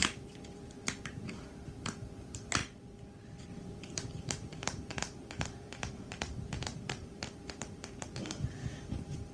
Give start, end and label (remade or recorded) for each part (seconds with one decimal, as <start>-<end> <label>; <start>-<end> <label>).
0.0-2.6 remade; 2.6-3.5 recorded; 3.5-9.3 remade